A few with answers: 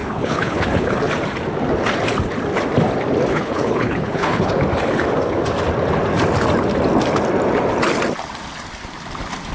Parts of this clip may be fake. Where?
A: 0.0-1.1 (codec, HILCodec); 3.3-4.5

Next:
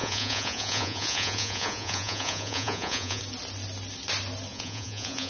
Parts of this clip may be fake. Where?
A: 0.0-3.2 (vocoder, Vocos); 4.5-5.3

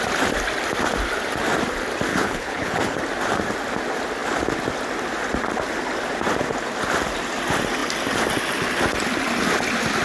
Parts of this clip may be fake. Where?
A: 2.1-3.0 (codec, HILCodec)